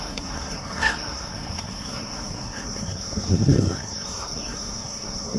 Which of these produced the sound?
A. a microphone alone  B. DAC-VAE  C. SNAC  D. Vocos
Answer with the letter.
C